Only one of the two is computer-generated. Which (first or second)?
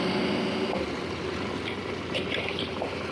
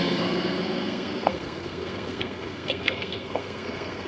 second